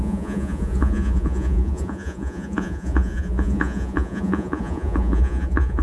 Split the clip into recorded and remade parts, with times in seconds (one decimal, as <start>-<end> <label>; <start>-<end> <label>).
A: 0.0-5.8 remade